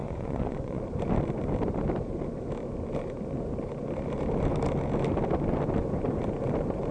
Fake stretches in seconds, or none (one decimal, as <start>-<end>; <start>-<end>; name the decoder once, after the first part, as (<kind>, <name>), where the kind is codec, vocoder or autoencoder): 0.0-0.8 (vocoder, Vocos)